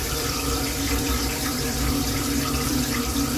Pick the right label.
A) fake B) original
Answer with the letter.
A